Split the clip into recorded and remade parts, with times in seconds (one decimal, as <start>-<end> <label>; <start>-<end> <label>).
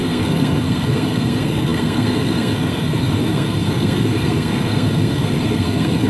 0.0-6.1 remade